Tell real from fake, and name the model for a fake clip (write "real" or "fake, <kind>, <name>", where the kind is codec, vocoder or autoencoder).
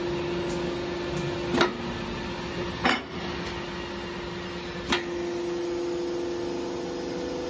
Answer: real